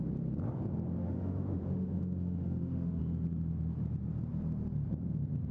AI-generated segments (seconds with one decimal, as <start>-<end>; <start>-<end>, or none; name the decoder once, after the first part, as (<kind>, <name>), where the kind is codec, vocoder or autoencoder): 1.0-3.0 (autoencoder, DAC-VAE)